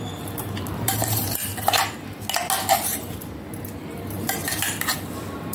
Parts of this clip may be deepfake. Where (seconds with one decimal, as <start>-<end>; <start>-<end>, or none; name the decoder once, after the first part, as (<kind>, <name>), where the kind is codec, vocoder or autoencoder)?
0.0-1.5 (vocoder, BigVGAN v2); 2.7-3.2; 3.8-5.5

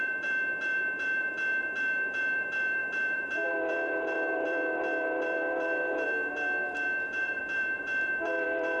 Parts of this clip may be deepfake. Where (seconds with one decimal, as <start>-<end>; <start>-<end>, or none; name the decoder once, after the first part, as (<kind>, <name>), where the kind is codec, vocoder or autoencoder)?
0.0-8.8 (vocoder, BigVGAN v2)

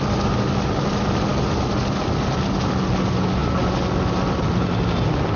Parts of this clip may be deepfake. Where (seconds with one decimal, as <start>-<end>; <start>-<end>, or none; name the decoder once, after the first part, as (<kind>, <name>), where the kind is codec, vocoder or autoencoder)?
none

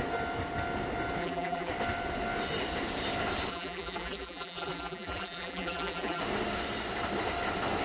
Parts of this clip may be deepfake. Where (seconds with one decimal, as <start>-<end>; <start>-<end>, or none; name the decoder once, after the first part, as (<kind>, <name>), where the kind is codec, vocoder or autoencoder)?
1.2-1.7 (vocoder, BigVGAN v2); 3.5-6.2